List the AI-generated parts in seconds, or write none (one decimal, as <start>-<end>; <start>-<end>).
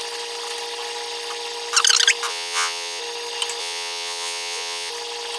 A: 2.3-3.0; 3.6-4.9